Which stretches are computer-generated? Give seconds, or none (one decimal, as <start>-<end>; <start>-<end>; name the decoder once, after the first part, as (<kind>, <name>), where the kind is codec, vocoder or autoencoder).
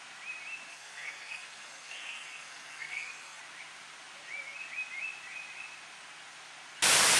0.7-3.4 (codec, SNAC)